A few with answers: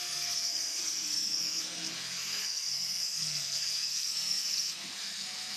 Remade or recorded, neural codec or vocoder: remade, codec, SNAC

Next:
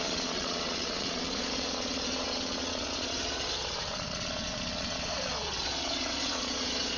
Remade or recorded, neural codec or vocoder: remade, vocoder, Vocos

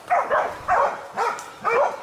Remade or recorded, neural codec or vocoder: remade, vocoder, BigVGAN v2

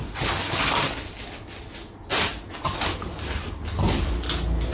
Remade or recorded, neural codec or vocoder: recorded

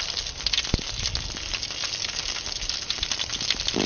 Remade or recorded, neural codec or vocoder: recorded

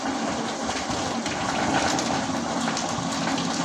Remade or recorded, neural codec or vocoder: recorded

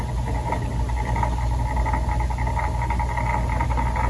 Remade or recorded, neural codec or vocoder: recorded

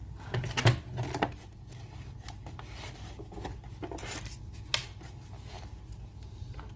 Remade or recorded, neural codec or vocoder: recorded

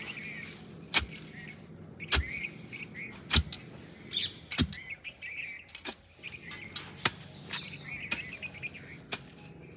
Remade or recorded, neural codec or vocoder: recorded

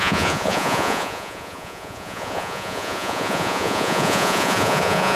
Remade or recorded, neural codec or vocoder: remade, vocoder, Vocos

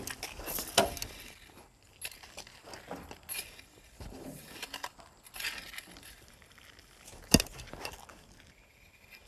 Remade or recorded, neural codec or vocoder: recorded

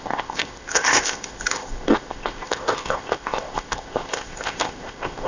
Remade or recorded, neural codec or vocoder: remade, codec, ZipCodec